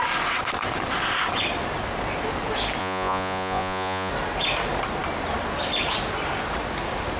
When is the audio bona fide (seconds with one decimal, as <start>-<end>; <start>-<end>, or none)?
0.0-2.8; 4.1-7.2